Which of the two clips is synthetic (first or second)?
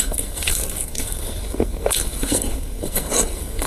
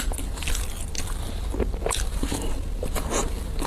first